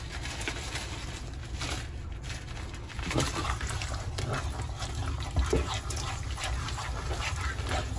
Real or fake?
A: real